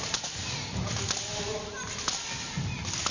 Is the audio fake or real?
real